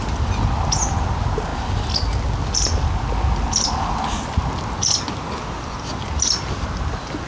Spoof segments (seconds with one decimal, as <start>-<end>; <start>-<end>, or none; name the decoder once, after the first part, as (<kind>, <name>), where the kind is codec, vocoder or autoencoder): none

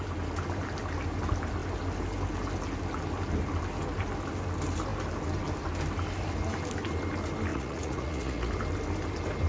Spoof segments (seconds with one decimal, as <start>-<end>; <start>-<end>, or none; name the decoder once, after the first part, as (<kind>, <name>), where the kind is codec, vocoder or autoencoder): 7.5-8.5 (vocoder, Vocos)